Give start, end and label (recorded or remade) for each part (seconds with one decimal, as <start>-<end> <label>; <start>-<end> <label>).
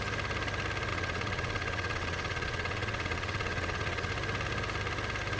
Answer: 0.0-0.9 recorded; 0.9-4.1 remade; 4.1-5.4 recorded